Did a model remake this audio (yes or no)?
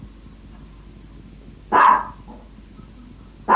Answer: no